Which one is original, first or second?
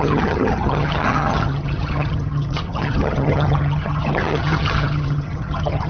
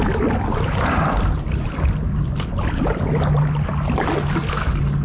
second